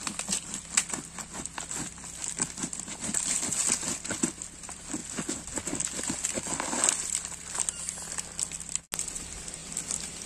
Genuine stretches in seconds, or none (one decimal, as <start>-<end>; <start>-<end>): 0.0-10.3